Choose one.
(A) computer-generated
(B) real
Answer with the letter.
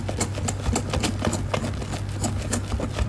B